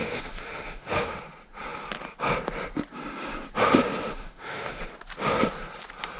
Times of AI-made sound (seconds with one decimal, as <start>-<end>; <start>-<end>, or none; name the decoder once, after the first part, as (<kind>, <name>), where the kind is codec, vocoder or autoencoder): 0.0-1.2 (autoencoder, DAC-VAE); 4.1-4.8